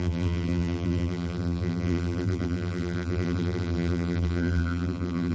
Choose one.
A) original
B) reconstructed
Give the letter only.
B